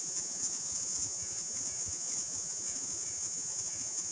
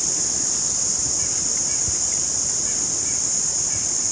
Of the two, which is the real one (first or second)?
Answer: second